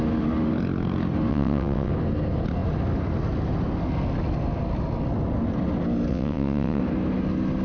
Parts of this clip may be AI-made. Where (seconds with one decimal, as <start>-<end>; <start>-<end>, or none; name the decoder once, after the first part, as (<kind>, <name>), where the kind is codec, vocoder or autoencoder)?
1.3-1.9 (vocoder, WaveNeXt); 6.1-6.8